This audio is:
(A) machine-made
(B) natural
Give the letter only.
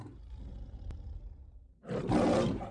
B